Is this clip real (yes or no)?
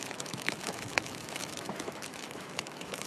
no